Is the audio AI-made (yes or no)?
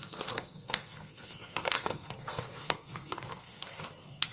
yes